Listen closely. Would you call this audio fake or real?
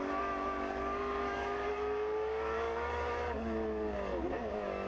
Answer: fake